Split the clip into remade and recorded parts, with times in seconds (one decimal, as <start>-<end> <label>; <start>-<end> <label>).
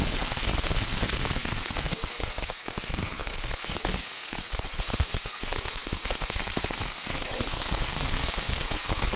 0.0-9.2 remade